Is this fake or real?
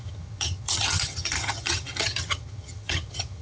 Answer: fake